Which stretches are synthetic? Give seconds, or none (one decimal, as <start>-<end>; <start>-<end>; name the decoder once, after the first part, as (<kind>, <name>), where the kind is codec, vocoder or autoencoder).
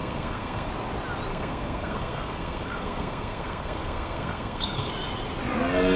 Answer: 0.0-0.7 (codec, SNAC); 1.3-4.9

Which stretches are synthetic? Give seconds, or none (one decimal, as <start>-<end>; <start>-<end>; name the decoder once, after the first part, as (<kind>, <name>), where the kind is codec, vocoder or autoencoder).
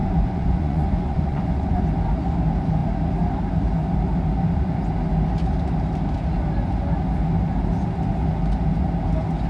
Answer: 0.0-1.8 (vocoder, Vocos)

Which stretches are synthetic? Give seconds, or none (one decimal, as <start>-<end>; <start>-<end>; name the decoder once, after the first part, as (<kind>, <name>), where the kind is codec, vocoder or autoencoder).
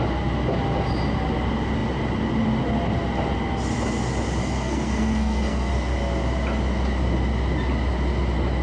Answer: 4.4-5.7 (codec, SNAC)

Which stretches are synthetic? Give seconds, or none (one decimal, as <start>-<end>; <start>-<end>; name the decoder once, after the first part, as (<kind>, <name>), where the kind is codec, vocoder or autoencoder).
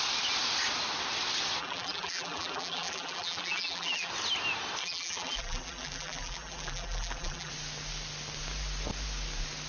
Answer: 1.6-4.1 (vocoder, BigVGAN v2); 4.8-7.5